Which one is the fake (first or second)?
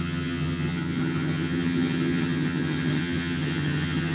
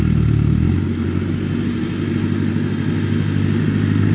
first